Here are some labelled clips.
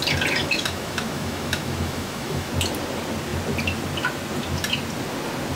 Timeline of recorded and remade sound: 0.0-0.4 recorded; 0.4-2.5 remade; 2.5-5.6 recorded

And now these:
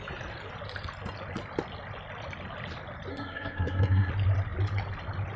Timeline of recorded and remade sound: 0.0-3.1 recorded; 3.1-4.1 remade; 4.1-5.4 recorded

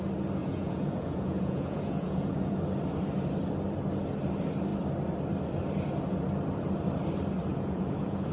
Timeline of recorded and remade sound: 0.0-0.4 recorded; 0.4-2.6 remade; 2.6-7.5 recorded; 7.5-8.3 remade